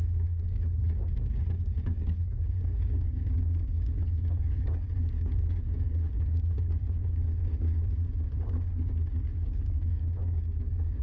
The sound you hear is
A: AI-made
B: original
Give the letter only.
A